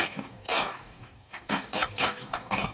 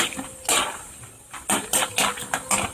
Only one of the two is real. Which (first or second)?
second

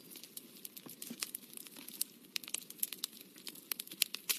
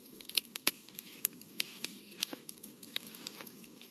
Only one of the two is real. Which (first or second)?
first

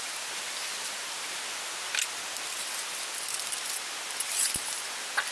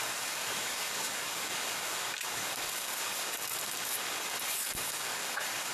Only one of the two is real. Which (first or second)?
first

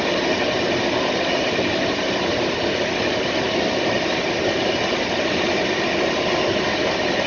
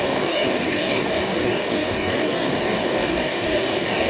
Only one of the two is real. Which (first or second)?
first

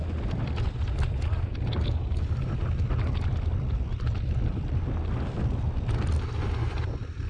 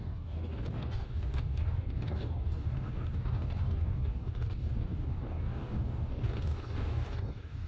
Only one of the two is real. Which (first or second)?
first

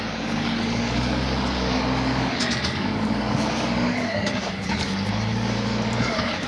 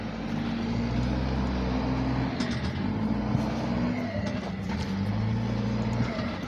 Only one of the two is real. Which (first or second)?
second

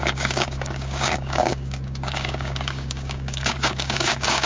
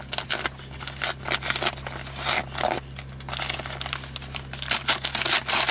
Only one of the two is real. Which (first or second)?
second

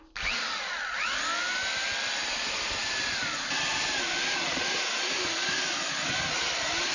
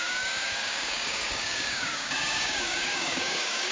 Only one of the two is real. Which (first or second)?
first